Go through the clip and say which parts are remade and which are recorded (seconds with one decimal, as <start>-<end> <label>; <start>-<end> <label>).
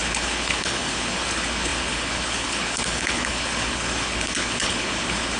0.0-5.4 remade